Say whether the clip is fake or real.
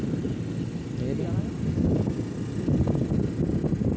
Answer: real